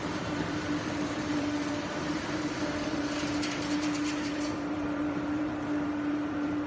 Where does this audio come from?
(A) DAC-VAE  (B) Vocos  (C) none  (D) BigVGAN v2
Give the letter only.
D